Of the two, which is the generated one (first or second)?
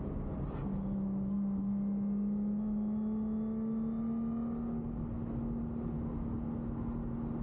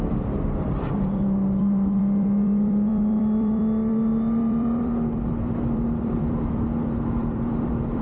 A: second